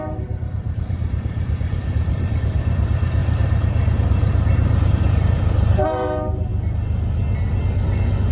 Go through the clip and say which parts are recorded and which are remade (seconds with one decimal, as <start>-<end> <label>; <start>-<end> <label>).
0.0-6.5 remade; 6.5-8.3 recorded